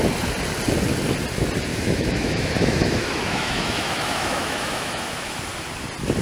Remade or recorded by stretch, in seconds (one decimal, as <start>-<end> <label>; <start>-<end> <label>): 0.0-1.7 recorded; 1.7-5.4 remade; 5.4-6.2 recorded